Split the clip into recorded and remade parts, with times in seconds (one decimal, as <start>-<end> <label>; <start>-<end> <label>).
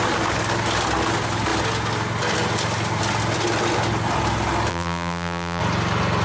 0.0-4.7 recorded; 4.7-5.6 remade; 5.6-6.2 recorded